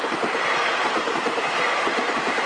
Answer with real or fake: real